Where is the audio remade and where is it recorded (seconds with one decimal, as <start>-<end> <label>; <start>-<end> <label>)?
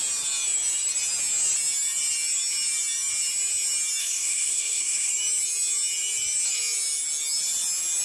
0.0-4.0 recorded; 4.0-5.1 remade; 5.1-8.0 recorded